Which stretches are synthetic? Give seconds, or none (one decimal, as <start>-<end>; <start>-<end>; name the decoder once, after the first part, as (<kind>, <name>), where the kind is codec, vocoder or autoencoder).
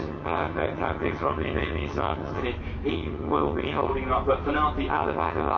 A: 0.0-2.4 (vocoder, HiFi-GAN); 2.9-3.9; 4.9-5.6